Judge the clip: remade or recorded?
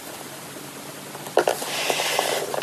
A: recorded